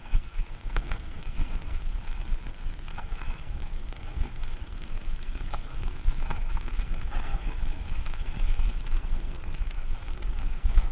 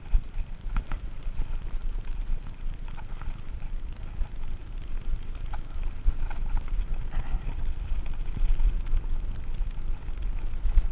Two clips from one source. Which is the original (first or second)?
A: second